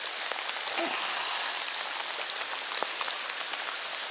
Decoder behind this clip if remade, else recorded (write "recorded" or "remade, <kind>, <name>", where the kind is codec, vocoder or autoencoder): recorded